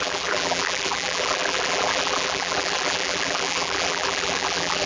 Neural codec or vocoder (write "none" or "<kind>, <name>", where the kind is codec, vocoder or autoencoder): vocoder, BigVGAN v2